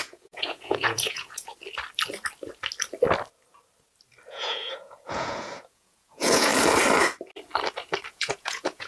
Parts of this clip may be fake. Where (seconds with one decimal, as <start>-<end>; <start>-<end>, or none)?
0.0-1.5; 4.3-6.5; 8.1-8.9